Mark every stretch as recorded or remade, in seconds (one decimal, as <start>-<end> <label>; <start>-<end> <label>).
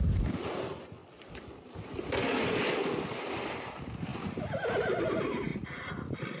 0.0-1.0 remade; 1.0-3.5 recorded; 3.5-5.5 remade; 5.5-6.4 recorded